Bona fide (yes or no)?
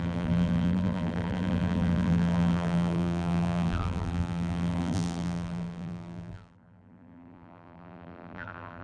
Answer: no